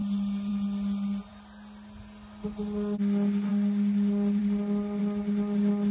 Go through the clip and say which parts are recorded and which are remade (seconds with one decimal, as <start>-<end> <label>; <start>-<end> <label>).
0.0-5.9 recorded